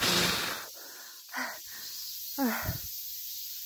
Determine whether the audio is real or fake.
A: real